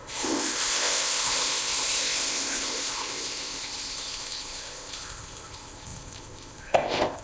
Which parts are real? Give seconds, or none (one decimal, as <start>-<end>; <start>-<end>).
none

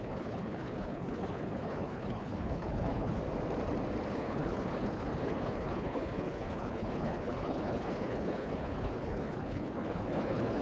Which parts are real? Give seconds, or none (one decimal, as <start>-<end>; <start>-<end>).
3.2-4.1